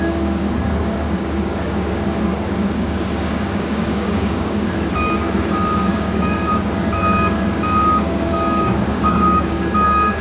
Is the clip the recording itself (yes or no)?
no